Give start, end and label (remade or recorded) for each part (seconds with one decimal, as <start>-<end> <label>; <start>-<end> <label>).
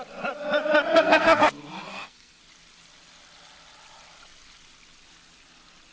0.0-0.9 recorded; 0.9-1.4 remade; 1.4-1.9 recorded; 1.9-2.4 remade; 2.4-5.9 recorded